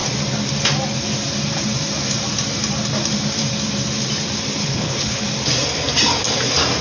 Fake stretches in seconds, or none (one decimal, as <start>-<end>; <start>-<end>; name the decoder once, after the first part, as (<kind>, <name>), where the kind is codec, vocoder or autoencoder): 4.6-5.2 (codec, HILCodec)